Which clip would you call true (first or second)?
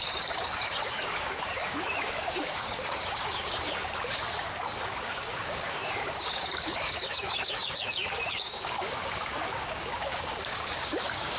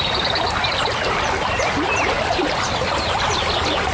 second